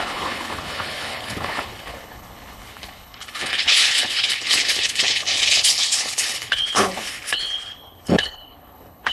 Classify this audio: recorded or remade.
remade